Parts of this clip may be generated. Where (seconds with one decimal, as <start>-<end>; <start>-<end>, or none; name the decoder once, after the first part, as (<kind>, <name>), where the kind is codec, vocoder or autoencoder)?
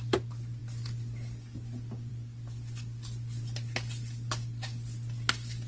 none